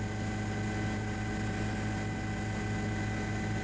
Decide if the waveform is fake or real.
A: real